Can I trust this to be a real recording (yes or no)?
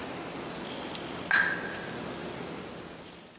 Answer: yes